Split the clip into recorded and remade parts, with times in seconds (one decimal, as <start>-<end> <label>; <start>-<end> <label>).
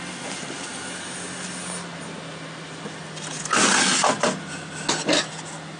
0.0-5.8 recorded